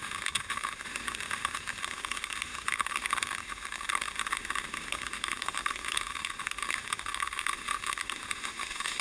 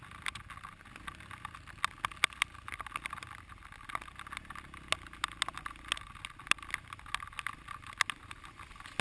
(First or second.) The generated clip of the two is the first